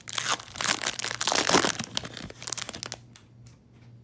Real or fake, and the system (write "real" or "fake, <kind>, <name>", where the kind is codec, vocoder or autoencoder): real